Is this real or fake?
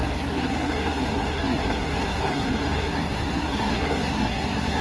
fake